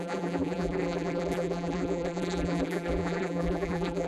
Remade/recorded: remade